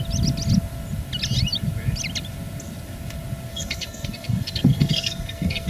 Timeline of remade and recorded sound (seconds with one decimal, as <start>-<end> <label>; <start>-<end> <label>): 0.0-3.5 recorded; 3.5-5.7 remade